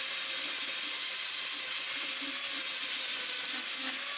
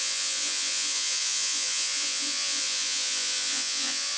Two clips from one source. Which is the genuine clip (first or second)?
first